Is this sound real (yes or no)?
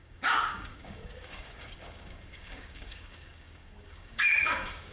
no